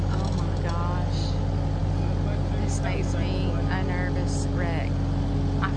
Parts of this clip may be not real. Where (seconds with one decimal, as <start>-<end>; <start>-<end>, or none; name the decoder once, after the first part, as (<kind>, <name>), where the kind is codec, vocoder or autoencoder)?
none